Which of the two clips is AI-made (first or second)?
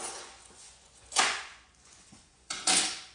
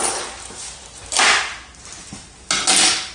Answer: first